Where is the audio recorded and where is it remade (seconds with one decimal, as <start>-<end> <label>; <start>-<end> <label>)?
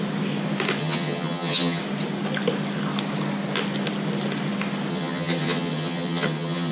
0.0-0.8 recorded; 0.8-1.8 remade; 1.8-4.9 recorded; 4.9-6.7 remade